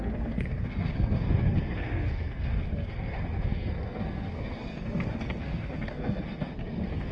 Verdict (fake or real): fake